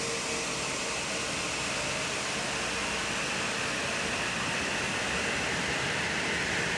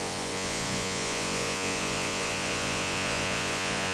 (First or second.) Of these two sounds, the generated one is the second